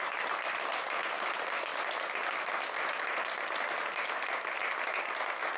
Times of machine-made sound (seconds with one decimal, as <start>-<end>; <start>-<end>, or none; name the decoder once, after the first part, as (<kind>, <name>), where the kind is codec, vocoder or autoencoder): none